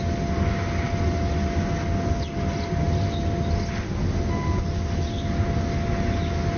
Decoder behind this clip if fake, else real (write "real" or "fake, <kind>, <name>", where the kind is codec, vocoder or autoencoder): real